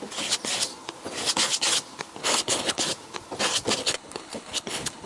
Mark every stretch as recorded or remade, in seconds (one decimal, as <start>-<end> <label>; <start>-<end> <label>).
0.0-2.2 recorded; 2.2-2.8 remade; 2.8-3.8 recorded; 3.8-5.1 remade